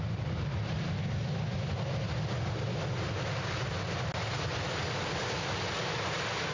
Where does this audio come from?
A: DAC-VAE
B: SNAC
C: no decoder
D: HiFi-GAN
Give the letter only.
C